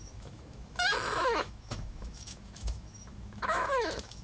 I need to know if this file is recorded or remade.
remade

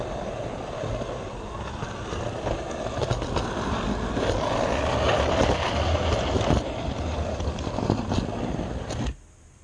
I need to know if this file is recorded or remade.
recorded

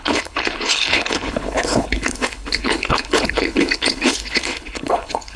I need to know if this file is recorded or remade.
remade